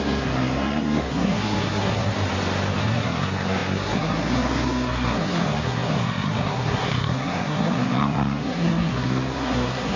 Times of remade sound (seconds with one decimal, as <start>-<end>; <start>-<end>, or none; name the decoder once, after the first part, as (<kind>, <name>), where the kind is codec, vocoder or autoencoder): 0.0-2.1 (codec, SNAC); 2.8-10.0